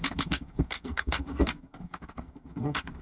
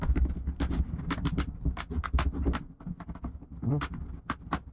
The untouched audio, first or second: second